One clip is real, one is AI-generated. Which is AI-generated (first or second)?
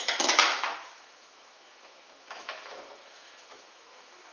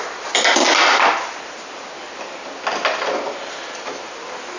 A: first